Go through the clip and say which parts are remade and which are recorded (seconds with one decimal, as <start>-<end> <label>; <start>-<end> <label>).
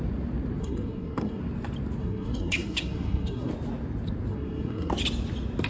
0.0-0.6 recorded; 0.6-1.4 remade; 1.4-2.0 recorded; 2.0-3.5 remade; 3.5-4.3 recorded; 4.3-4.9 remade; 4.9-5.7 recorded